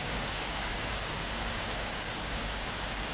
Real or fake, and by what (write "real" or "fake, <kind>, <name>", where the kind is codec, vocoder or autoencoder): fake, codec, DAC